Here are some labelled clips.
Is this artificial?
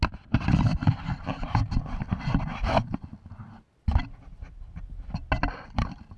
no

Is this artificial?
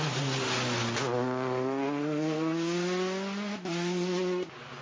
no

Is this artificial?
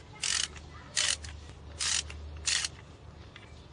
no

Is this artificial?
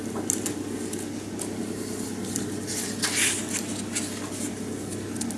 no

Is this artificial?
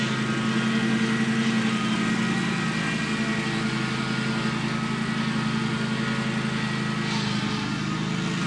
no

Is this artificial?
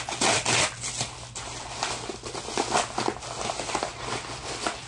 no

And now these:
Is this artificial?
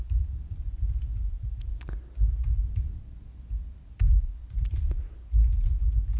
no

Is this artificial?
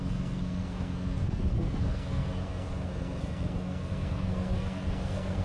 yes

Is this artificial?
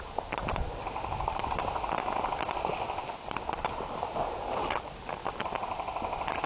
no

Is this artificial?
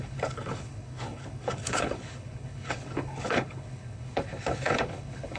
yes